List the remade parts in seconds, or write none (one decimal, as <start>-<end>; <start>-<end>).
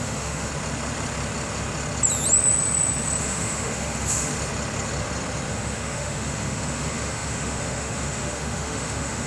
0.0-0.5; 3.2-4.3; 5.5-9.3